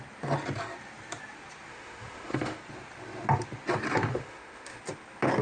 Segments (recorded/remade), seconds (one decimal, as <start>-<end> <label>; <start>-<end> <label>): 0.0-1.7 recorded; 1.7-2.6 remade; 2.6-4.1 recorded; 4.1-4.8 remade; 4.8-5.4 recorded